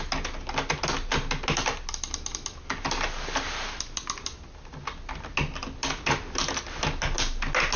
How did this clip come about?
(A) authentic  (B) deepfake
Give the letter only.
A